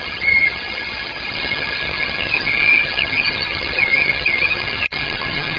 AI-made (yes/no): yes